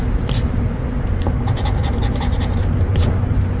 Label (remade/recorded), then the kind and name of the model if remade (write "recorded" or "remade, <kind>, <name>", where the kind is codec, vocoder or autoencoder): remade, vocoder, BigVGAN v2